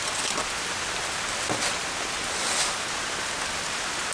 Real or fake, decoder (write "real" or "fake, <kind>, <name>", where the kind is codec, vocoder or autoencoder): real